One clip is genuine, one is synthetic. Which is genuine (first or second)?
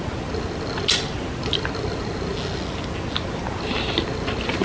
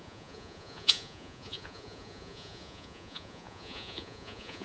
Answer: first